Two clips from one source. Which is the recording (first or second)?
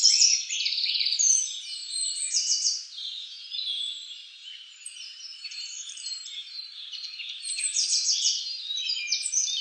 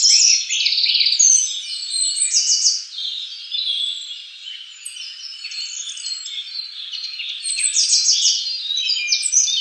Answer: second